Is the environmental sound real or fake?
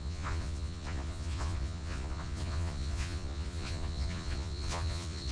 fake